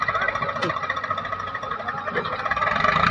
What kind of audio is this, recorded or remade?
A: recorded